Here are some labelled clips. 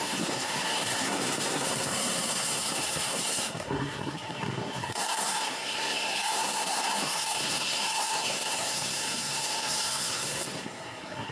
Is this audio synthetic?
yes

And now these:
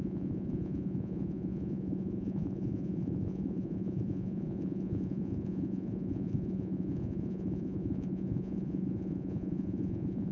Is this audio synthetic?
yes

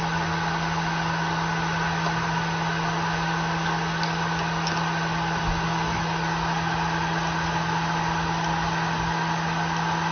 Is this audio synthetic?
no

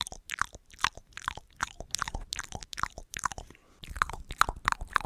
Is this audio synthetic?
yes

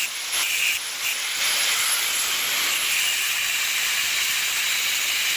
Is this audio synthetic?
no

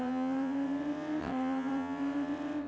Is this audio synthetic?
yes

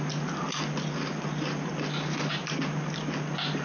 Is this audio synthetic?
no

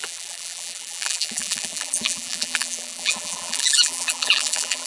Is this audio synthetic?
yes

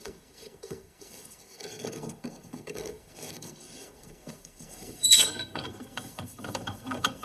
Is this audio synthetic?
yes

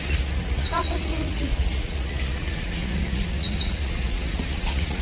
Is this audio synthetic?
yes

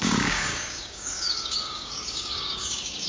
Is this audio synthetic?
yes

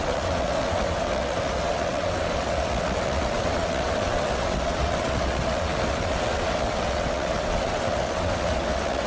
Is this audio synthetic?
yes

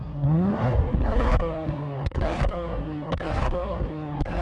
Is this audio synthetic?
yes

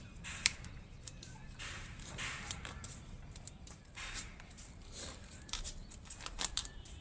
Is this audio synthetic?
yes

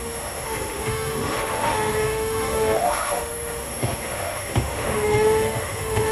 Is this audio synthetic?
yes